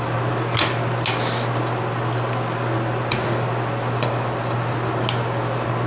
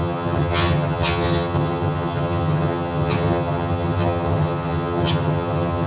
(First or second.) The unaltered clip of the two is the first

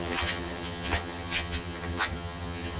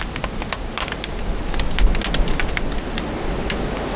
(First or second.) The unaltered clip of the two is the second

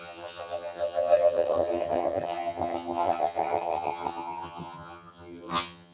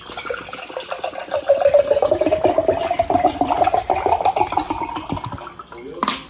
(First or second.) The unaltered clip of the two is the second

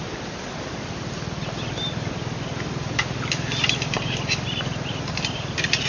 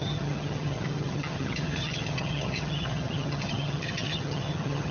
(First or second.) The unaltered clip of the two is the first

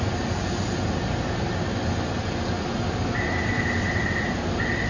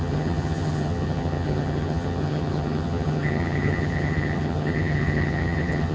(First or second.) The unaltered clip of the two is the first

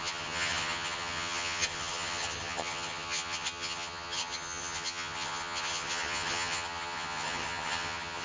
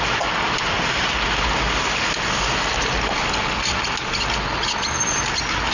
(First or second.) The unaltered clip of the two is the second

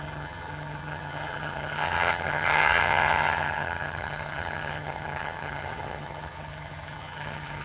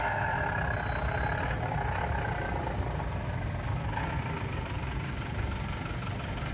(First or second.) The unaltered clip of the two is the second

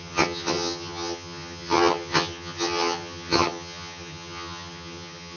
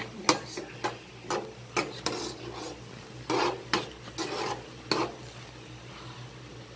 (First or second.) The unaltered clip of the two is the second